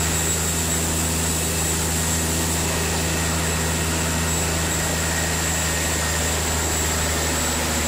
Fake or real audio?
real